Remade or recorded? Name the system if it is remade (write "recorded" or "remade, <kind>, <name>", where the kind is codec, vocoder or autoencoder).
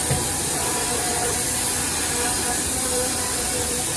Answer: remade, vocoder, BigVGAN v2